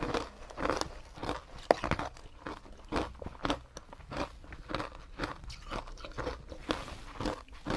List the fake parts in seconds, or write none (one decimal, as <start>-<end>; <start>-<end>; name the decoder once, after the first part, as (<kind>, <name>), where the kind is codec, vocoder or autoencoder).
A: none